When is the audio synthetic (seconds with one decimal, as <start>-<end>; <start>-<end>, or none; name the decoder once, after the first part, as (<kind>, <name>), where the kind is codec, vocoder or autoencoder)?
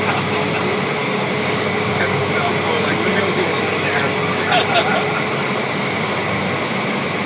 1.0-2.3 (codec, DAC); 3.1-3.6; 5.6-6.4